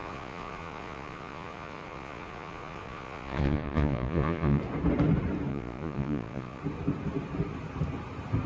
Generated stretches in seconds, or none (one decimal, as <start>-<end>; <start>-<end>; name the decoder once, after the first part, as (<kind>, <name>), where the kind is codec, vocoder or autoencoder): 0.0-4.6 (vocoder, Vocos); 5.5-6.6